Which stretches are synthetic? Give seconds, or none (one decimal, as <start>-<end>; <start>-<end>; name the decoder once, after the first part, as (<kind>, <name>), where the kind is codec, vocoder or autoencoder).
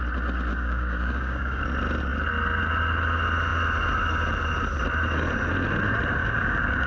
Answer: 0.5-1.6 (codec, DAC); 6.2-6.9